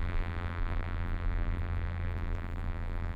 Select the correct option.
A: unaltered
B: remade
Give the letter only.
B